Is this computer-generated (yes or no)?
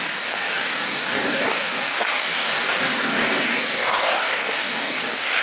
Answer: yes